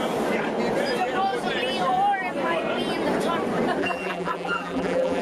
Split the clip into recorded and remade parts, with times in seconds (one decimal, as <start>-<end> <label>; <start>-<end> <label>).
0.0-3.8 recorded; 3.8-5.2 remade